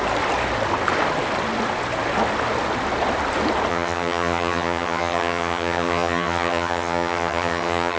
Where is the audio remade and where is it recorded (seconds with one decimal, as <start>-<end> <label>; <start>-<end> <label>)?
0.0-3.7 recorded; 3.7-8.0 remade